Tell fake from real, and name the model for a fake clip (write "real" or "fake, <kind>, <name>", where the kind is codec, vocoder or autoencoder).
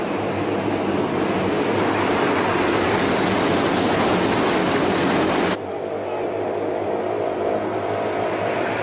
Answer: real